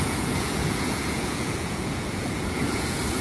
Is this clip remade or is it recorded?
remade